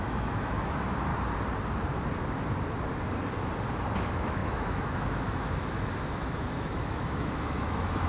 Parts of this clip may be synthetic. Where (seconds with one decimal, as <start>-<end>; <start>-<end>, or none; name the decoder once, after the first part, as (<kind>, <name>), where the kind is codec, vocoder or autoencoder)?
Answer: 0.0-1.1 (autoencoder, DAC-VAE); 4.0-8.1